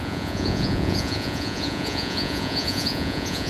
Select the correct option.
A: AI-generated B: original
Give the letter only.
A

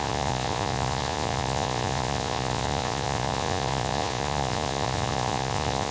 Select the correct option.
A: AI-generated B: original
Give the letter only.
A